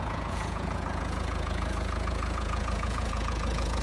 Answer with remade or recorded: remade